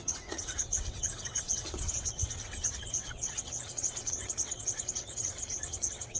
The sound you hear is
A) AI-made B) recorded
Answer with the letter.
A